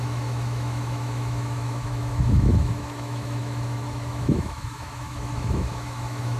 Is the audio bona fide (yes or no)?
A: no